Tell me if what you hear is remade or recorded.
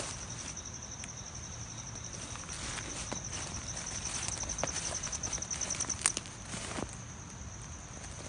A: recorded